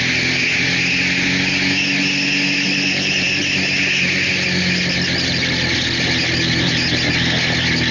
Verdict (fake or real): real